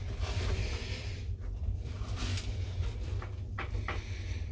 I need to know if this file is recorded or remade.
remade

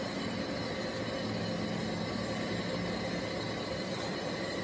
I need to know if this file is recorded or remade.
recorded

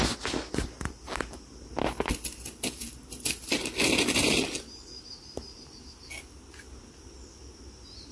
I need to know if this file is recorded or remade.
recorded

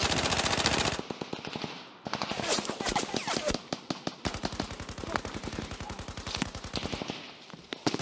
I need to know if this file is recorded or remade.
recorded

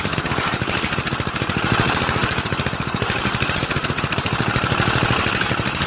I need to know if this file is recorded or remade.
remade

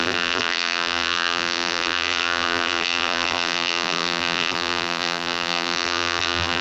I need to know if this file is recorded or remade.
remade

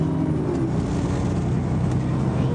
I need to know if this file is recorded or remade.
recorded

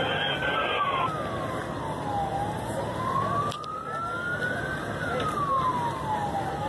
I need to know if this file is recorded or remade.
recorded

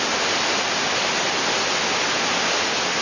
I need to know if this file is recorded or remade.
recorded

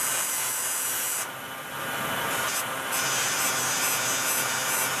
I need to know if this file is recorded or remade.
remade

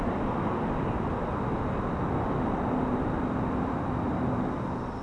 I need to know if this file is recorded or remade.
recorded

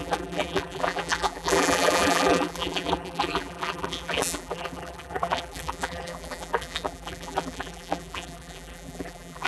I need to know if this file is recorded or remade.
remade